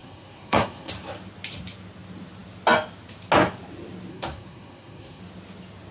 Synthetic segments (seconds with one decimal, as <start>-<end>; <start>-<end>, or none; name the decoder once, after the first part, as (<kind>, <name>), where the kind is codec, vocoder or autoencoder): 0.0-0.9 (codec, SNAC); 4.1-5.2